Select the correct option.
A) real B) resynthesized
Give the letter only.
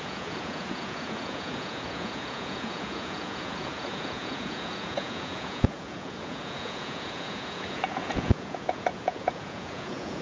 B